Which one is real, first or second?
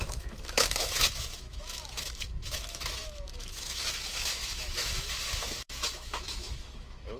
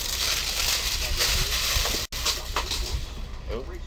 second